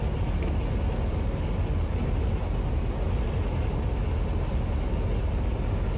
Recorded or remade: recorded